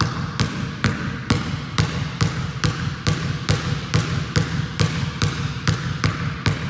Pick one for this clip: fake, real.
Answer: real